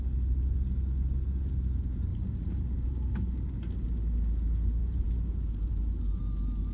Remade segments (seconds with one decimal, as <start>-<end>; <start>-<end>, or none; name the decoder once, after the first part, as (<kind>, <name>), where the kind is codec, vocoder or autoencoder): 2.1-3.1 (vocoder, BigVGAN v2); 4.8-6.2